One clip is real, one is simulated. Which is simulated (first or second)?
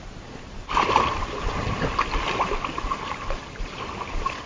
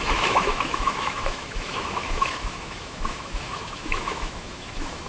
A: second